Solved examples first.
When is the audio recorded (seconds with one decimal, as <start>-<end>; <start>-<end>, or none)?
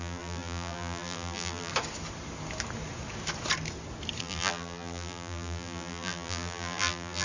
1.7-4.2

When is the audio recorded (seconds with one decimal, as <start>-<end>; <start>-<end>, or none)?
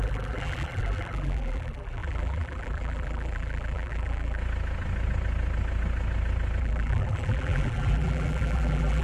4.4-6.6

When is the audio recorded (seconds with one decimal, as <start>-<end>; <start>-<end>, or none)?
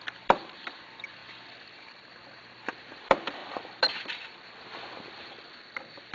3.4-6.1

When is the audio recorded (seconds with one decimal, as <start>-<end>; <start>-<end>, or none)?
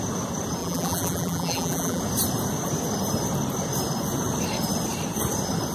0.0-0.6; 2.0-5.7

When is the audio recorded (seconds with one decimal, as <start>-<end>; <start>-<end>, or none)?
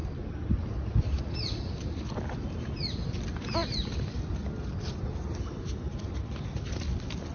2.0-3.6; 6.7-7.3